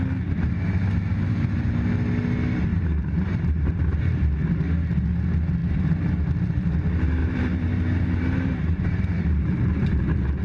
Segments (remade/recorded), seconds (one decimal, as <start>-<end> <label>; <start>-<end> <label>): 0.0-1.1 recorded; 1.1-1.6 remade; 1.6-2.7 recorded; 2.7-4.0 remade; 4.0-5.6 recorded; 5.6-6.1 remade; 6.1-7.2 recorded; 7.2-8.9 remade; 8.9-10.4 recorded